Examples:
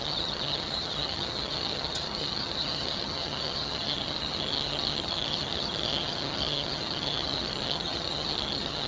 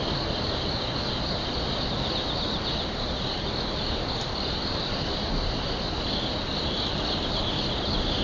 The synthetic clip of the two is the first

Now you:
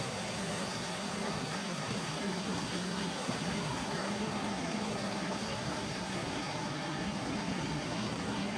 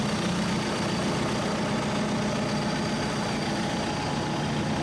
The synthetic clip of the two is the first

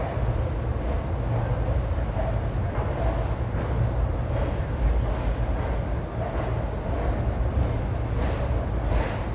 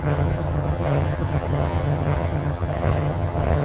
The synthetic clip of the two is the second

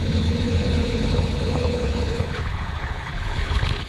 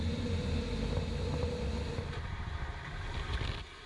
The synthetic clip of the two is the first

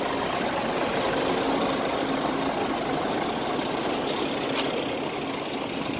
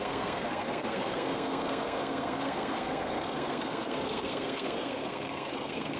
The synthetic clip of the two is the second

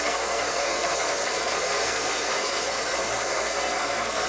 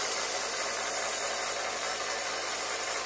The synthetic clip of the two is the first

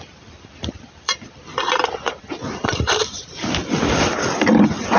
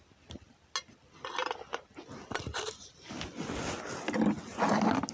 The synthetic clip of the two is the first